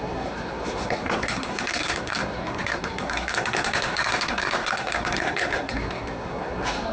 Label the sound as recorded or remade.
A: remade